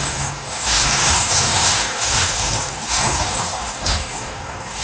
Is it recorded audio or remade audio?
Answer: remade